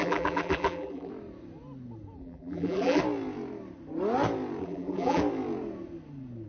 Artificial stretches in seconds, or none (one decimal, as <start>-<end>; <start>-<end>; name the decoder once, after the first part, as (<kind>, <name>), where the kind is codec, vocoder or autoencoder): 0.0-1.1 (vocoder, BigVGAN v2); 2.2-3.0; 4.6-5.2